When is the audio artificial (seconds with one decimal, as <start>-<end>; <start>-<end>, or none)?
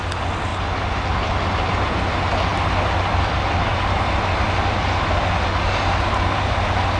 none